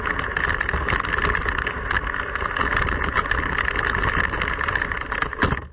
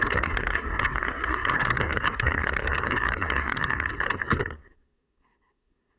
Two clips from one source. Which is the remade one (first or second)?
second